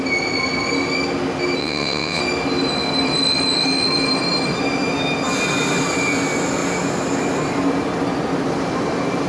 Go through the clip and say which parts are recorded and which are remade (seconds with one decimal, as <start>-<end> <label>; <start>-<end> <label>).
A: 0.0-1.6 recorded; 1.6-2.2 remade; 2.2-9.3 recorded